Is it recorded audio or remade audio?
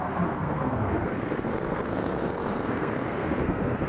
remade